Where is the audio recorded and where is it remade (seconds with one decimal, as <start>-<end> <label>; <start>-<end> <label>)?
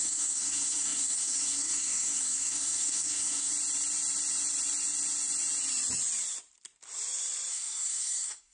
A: 0.0-3.5 remade; 3.5-7.5 recorded; 7.5-8.5 remade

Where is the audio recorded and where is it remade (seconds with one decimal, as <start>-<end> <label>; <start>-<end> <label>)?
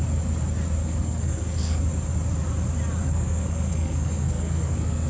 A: 0.0-0.8 recorded; 0.8-1.8 remade; 1.8-3.0 recorded; 3.0-5.1 remade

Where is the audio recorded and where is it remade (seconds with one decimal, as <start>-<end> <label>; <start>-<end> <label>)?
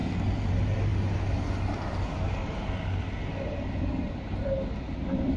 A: 0.0-5.4 recorded